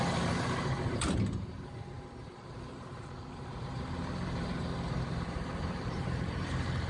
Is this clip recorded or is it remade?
remade